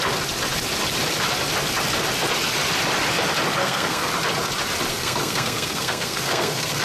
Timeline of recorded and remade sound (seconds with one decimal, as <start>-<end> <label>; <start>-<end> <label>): 0.0-3.6 recorded; 3.6-4.1 remade; 4.1-4.9 recorded; 4.9-6.8 remade